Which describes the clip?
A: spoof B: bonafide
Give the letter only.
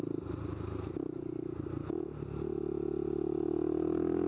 B